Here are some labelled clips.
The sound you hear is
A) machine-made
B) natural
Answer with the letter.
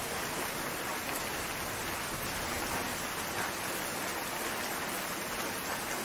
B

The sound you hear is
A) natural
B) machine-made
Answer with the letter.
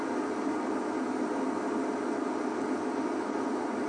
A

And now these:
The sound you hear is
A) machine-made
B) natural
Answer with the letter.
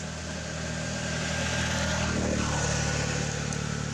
B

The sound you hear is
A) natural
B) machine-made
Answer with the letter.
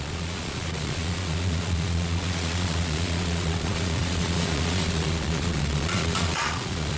B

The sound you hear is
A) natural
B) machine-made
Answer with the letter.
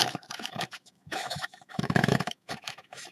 B